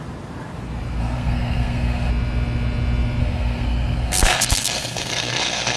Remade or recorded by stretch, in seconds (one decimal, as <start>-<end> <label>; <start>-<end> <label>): 0.0-1.0 recorded; 1.0-2.1 remade; 2.1-3.2 recorded; 3.2-5.8 remade

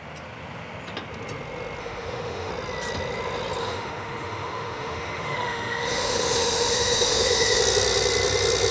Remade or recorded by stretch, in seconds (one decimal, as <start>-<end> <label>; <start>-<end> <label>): 0.0-1.8 recorded; 1.8-2.5 remade; 2.5-3.6 recorded; 3.6-7.6 remade; 7.6-8.7 recorded

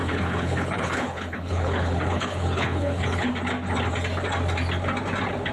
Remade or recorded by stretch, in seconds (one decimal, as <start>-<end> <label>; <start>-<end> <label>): 0.0-3.3 remade; 3.3-5.5 recorded

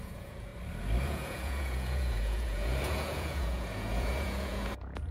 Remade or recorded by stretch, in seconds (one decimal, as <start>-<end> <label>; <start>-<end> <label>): 0.0-0.5 remade; 0.5-1.0 recorded; 1.0-5.1 remade

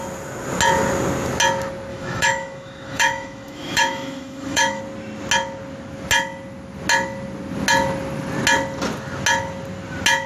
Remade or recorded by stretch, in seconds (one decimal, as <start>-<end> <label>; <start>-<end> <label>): 0.0-1.9 recorded; 1.9-4.8 remade; 4.8-10.3 recorded

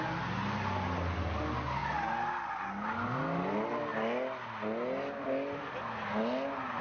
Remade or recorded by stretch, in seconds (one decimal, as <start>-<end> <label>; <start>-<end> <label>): 0.0-6.8 recorded

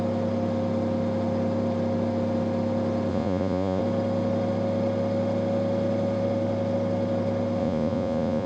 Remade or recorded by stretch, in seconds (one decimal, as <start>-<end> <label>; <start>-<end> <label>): 0.0-3.1 recorded; 3.1-3.8 remade; 3.8-7.6 recorded; 7.6-8.5 remade